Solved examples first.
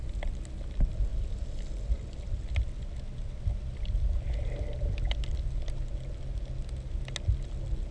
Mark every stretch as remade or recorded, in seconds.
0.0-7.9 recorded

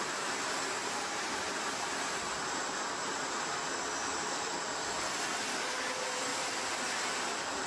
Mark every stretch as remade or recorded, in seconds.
0.0-0.8 recorded; 0.8-3.6 remade; 3.6-4.1 recorded; 4.1-4.7 remade; 4.7-7.7 recorded

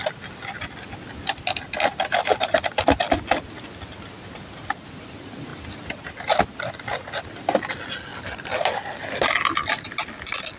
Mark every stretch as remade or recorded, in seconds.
0.0-8.1 recorded; 8.1-9.8 remade; 9.8-10.6 recorded

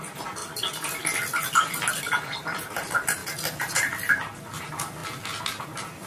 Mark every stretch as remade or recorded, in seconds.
0.0-0.4 remade; 0.4-1.9 recorded; 1.9-3.2 remade; 3.2-3.7 recorded; 3.7-5.0 remade; 5.0-5.6 recorded; 5.6-6.1 remade

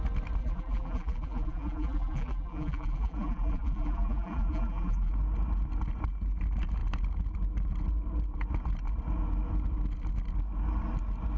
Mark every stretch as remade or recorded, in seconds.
0.0-0.4 recorded; 0.4-5.1 remade; 5.1-11.4 recorded

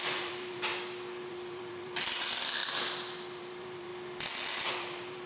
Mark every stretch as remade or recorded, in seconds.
0.0-0.7 remade; 0.7-1.3 recorded; 1.3-2.6 remade; 2.6-3.4 recorded; 3.4-3.9 remade; 3.9-4.7 recorded; 4.7-5.3 remade